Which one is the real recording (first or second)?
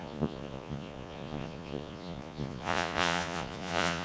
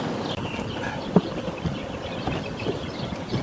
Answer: second